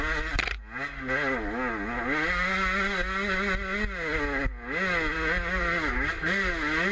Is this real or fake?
real